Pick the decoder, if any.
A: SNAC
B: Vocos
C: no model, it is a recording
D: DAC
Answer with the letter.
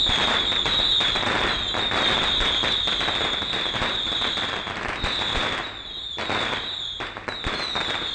C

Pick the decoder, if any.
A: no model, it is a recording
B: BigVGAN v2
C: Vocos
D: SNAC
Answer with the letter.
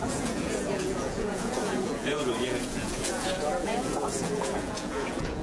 C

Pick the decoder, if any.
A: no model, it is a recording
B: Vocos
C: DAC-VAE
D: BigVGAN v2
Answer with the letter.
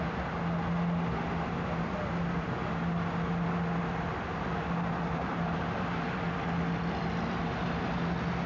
A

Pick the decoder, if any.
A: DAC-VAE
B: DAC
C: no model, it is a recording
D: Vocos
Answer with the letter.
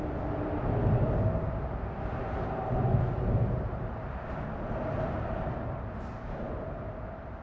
C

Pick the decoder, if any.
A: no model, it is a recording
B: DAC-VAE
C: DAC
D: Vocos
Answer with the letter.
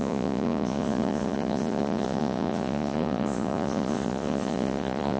D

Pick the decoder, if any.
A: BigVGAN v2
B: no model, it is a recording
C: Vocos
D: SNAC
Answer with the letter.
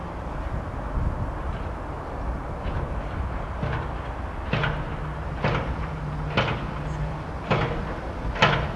B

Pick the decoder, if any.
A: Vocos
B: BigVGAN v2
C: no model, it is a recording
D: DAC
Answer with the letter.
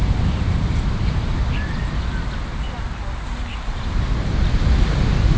C